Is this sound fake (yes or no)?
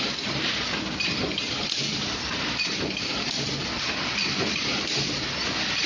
yes